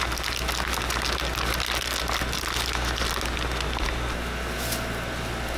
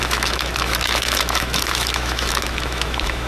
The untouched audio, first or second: first